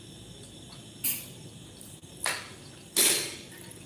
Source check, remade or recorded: recorded